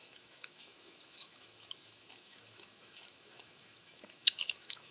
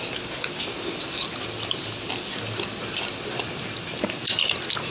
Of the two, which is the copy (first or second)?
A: first